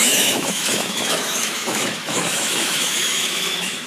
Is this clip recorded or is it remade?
remade